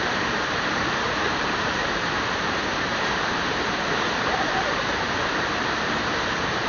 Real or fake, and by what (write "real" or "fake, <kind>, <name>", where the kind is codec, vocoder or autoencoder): fake, vocoder, BigVGAN v2